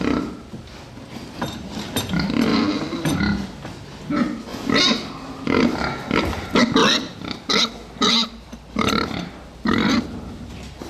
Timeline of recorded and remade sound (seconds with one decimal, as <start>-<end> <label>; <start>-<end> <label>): 0.0-2.5 recorded; 2.5-3.2 remade; 3.2-4.5 recorded; 4.5-5.1 remade; 5.1-6.8 recorded; 6.8-7.5 remade; 7.5-8.2 recorded; 8.2-10.3 remade; 10.3-10.9 recorded